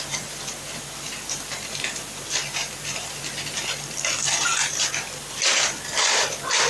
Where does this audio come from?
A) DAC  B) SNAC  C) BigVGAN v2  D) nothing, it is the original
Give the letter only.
C